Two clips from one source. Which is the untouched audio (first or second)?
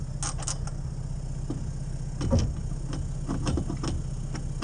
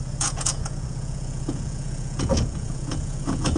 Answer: first